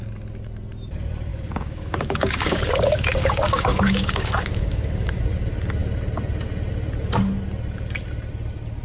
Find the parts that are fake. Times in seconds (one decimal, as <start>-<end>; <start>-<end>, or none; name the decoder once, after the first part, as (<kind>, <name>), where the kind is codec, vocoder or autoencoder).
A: 1.3-5.2 (codec, DAC)